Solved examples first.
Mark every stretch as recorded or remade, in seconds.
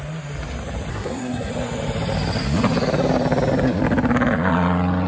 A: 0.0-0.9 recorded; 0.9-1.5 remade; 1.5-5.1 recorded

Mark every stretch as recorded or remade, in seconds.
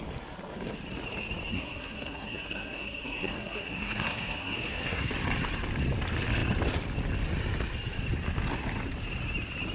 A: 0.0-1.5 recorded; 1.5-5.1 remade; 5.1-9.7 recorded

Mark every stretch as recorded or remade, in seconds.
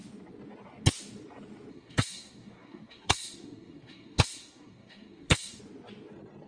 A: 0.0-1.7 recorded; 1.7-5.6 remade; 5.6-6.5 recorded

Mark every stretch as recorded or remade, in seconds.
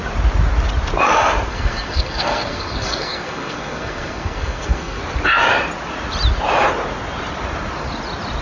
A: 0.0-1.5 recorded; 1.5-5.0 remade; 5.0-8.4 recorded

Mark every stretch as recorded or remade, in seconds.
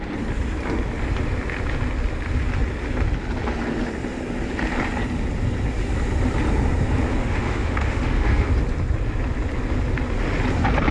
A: 0.0-7.2 recorded; 7.2-8.5 remade; 8.5-10.9 recorded